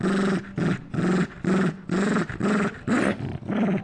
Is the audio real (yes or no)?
yes